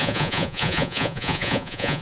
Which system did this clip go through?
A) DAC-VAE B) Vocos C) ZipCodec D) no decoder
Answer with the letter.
B